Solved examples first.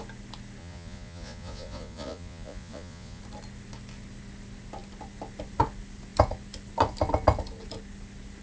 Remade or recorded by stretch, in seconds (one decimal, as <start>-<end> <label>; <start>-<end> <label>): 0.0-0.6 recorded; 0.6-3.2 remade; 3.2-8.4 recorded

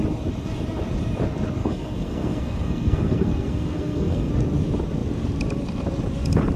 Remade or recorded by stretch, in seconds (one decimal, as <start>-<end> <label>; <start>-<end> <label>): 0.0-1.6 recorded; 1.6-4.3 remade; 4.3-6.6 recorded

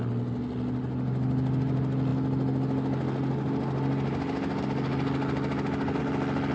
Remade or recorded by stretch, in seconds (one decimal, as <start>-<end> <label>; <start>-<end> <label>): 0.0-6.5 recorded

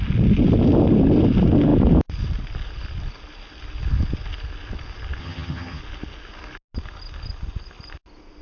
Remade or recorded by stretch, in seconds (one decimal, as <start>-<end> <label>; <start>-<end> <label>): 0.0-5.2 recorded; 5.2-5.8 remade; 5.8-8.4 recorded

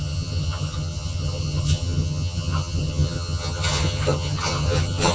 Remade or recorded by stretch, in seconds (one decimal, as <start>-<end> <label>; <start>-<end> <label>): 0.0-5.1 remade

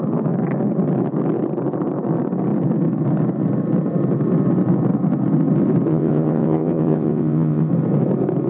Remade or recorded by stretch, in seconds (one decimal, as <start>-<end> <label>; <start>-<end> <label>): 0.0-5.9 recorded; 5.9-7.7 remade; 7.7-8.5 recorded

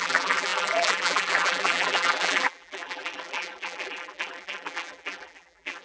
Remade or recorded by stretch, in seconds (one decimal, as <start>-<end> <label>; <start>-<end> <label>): 0.0-5.8 remade

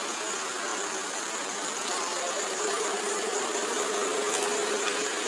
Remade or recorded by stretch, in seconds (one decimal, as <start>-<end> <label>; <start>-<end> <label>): 0.0-0.7 recorded; 0.7-3.9 remade; 3.9-5.3 recorded